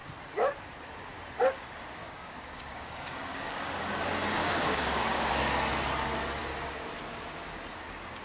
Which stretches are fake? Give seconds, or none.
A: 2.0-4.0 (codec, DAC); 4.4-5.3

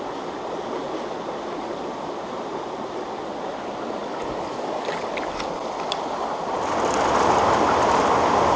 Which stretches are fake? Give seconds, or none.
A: 4.0-5.1 (codec, DAC)